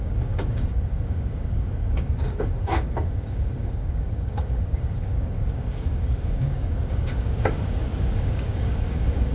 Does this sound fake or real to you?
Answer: fake